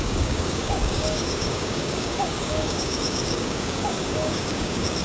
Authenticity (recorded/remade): remade